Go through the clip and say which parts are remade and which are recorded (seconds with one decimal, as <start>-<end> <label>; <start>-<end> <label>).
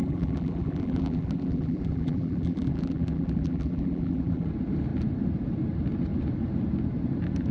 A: 0.0-4.5 remade; 4.5-7.5 recorded